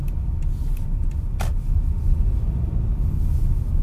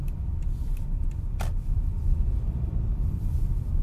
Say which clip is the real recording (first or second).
first